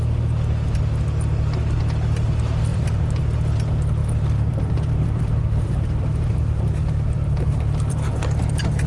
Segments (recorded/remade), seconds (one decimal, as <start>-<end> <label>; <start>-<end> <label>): 0.0-2.7 recorded; 2.7-3.2 remade; 3.2-4.0 recorded; 4.0-8.9 remade